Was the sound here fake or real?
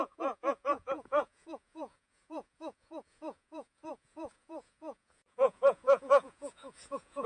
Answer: fake